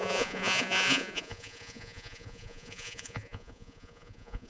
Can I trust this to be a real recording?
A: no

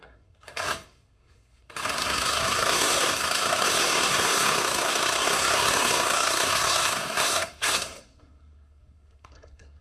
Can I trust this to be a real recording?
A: no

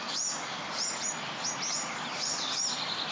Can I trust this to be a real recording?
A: yes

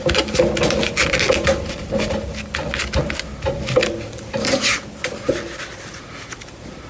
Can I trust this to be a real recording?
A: yes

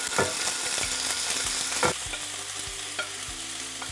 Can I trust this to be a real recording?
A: yes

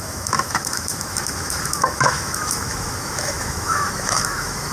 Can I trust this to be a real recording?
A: no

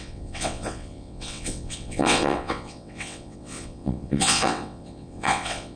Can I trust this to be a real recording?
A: no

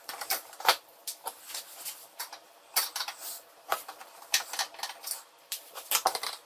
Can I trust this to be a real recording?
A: no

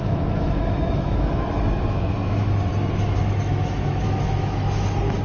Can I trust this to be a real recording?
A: no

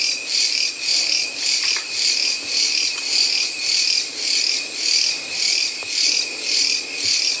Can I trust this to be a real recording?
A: yes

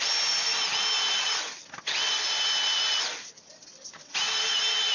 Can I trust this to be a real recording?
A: yes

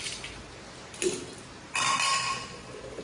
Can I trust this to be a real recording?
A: yes